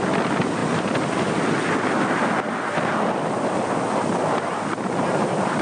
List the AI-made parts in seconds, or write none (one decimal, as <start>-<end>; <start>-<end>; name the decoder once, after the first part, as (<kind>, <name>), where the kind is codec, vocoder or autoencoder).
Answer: none